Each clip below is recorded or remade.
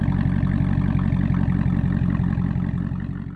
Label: recorded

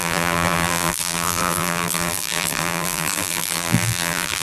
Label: remade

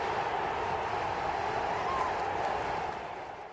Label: remade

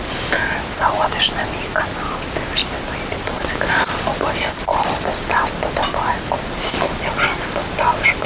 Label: recorded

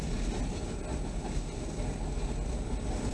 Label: recorded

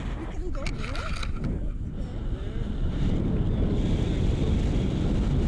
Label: recorded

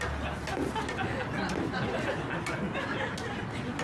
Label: recorded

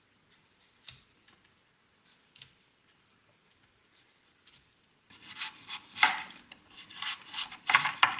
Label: remade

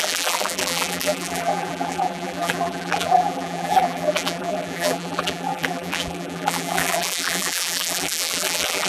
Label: remade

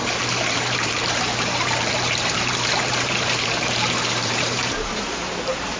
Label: remade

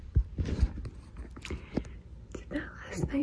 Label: remade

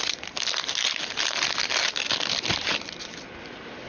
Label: recorded